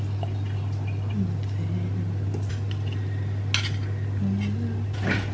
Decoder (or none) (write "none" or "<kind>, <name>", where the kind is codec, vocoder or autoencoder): none